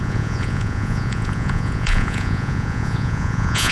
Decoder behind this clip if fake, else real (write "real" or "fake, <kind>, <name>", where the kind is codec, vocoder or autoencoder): fake, vocoder, Vocos